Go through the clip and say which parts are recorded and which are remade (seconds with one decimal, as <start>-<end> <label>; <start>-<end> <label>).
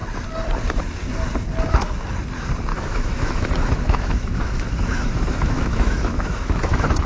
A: 0.0-2.7 recorded; 2.7-7.1 remade